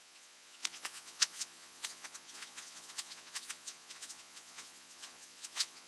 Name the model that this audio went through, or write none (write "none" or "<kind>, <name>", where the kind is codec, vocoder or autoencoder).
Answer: vocoder, Vocos